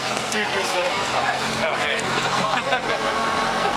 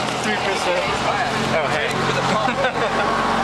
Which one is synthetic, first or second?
first